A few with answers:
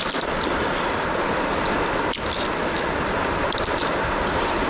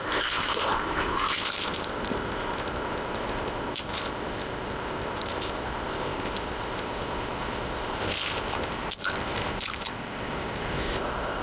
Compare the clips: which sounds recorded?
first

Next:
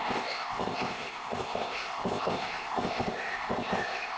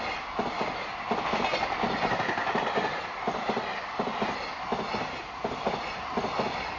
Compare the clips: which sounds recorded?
second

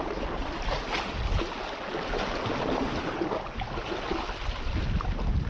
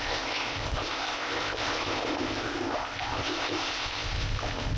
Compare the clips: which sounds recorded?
first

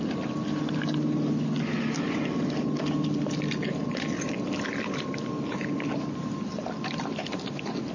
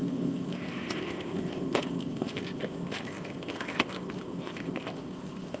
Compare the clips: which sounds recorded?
first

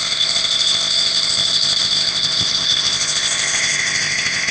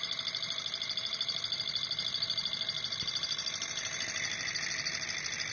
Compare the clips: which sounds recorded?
second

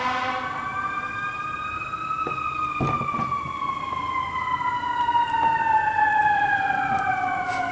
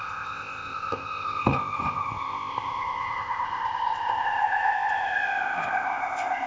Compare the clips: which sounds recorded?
first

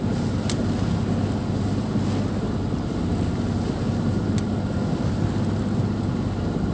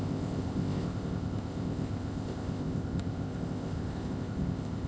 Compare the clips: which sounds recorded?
first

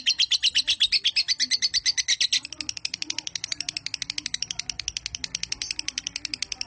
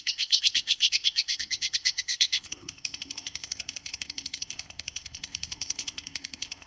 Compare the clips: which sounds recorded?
first